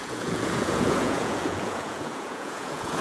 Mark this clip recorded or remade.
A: remade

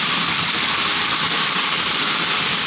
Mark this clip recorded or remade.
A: recorded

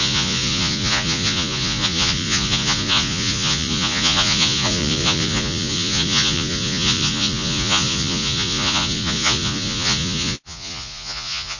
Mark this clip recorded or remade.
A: remade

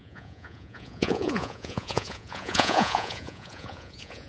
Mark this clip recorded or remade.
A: remade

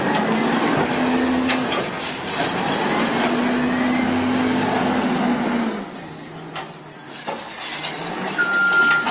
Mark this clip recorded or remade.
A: recorded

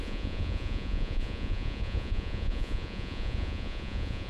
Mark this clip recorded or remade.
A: remade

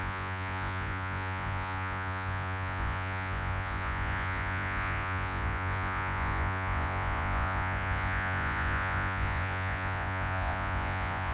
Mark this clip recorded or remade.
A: remade